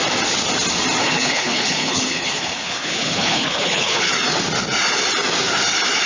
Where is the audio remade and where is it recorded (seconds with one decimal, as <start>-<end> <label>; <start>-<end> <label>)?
0.0-1.0 recorded; 1.0-4.1 remade; 4.1-6.1 recorded